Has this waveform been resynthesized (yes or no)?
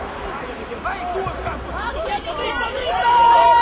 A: no